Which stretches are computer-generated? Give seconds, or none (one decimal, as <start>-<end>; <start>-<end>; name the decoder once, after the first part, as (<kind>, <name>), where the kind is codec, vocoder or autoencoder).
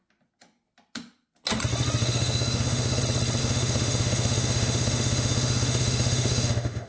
2.0-3.0 (autoencoder, DAC-VAE); 3.4-6.9